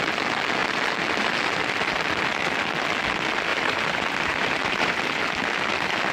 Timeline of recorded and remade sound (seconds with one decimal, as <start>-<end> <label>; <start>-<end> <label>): 0.0-3.5 recorded; 3.5-5.1 remade; 5.1-6.1 recorded